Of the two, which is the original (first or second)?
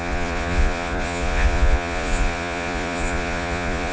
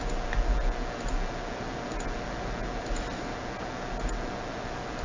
second